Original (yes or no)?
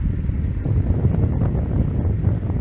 yes